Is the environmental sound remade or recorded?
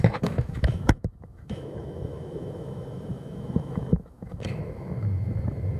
remade